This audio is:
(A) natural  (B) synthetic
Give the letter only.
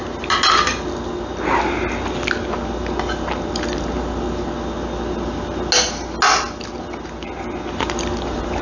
A